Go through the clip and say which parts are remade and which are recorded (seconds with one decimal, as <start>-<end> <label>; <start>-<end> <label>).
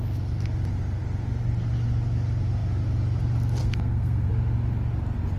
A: 0.0-3.6 recorded; 3.6-4.3 remade; 4.3-5.4 recorded